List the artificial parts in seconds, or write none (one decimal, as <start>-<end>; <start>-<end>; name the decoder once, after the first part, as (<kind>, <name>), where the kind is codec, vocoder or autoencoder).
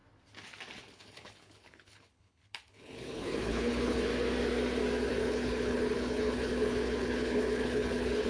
0.8-4.1 (codec, HILCodec); 5.1-8.3